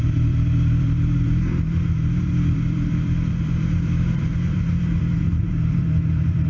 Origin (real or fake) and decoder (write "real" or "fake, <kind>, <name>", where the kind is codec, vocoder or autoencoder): fake, vocoder, BigVGAN v2